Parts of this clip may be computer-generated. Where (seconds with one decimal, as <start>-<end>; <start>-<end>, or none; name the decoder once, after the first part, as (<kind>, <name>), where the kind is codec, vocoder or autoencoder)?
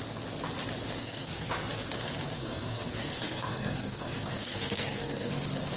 1.0-1.5 (codec, SNAC); 2.4-5.3